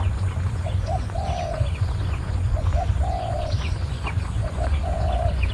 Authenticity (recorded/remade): remade